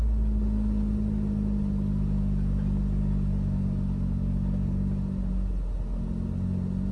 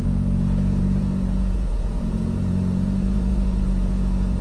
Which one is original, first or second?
first